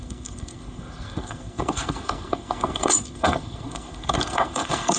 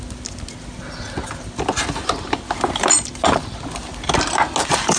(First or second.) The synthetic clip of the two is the first